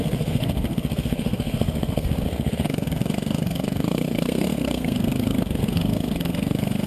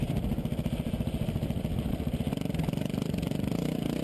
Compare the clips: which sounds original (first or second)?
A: second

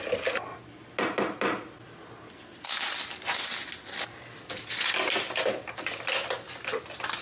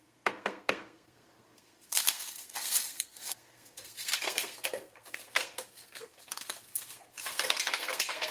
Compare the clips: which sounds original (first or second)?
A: first